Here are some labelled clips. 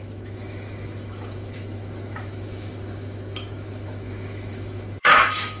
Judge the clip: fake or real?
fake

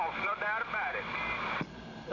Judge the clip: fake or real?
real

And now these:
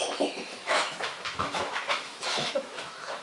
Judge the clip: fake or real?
fake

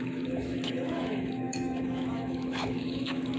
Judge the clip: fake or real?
fake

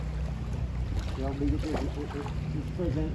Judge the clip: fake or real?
real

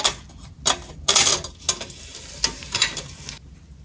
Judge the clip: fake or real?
real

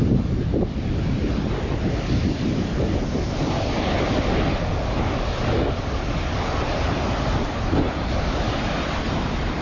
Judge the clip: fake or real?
real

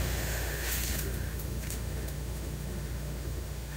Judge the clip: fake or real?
fake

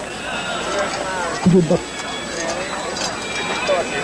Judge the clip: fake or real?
real